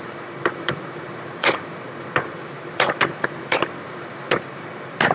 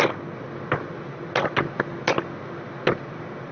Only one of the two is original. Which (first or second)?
second